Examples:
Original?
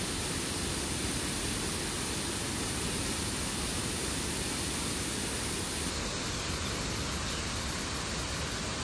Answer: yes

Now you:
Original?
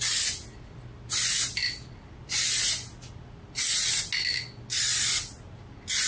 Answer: yes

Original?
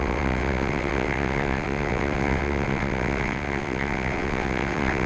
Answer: no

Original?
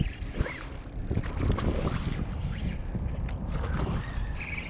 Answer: yes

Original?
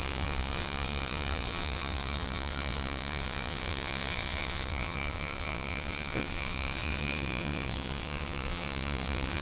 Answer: no